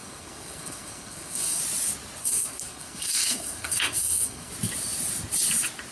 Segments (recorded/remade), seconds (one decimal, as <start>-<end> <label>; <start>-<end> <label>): 0.0-1.6 remade; 1.6-2.2 recorded; 2.2-4.5 remade; 4.5-5.9 recorded